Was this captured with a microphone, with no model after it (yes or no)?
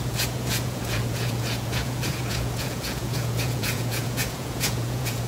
no